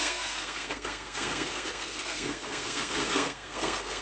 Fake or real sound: fake